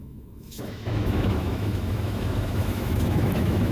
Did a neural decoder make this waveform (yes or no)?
yes